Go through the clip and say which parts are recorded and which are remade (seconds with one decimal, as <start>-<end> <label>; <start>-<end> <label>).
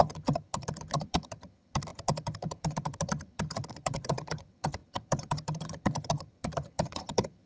0.0-7.5 remade